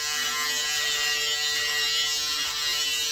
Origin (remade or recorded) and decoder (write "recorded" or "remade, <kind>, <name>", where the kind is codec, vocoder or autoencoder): recorded